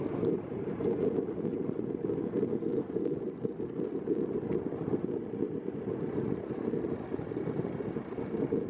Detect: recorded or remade recorded